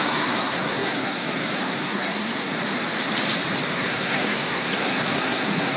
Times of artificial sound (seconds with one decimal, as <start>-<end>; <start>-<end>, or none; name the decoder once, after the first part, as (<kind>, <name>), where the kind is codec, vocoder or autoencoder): 0.0-2.5 (codec, SNAC); 3.7-5.8